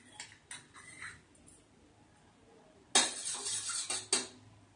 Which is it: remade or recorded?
recorded